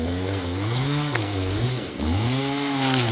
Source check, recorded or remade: remade